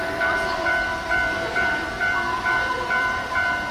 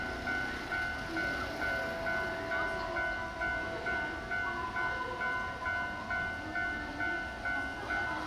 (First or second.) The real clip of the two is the second